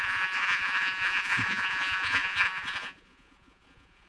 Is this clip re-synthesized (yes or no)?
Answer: yes